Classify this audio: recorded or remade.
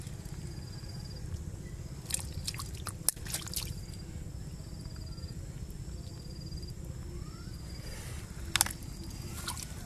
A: recorded